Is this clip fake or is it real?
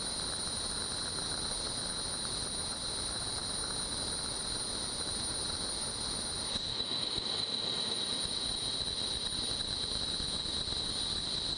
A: fake